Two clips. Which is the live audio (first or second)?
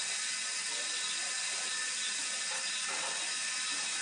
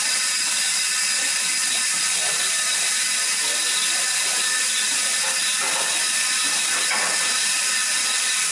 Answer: first